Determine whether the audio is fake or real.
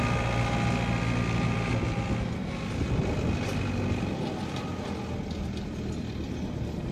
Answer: real